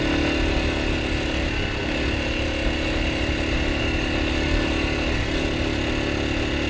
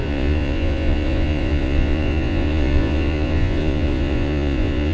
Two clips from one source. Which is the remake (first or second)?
second